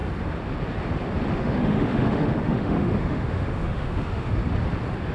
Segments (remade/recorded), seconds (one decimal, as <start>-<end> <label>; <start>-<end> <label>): 0.0-1.3 recorded; 1.3-4.4 remade; 4.4-5.1 recorded